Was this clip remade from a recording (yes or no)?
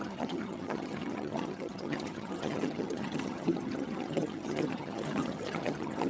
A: yes